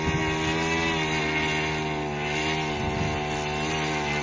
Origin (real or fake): real